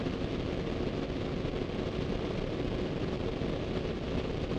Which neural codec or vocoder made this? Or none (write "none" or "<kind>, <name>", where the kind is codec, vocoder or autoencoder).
none